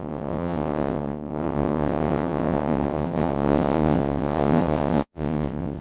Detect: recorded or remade remade